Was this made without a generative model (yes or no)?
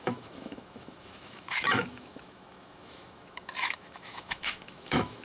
no